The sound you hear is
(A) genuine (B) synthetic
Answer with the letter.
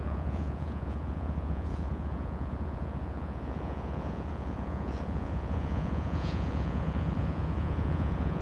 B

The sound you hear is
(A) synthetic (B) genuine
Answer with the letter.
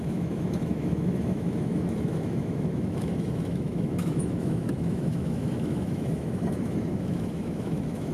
A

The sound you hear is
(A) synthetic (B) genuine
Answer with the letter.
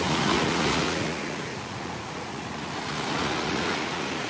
A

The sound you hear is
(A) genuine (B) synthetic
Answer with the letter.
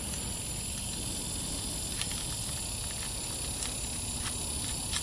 A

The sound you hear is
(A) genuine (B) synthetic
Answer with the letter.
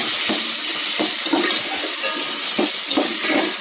A